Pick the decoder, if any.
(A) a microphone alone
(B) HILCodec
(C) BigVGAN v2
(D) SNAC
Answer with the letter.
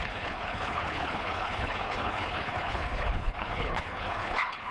B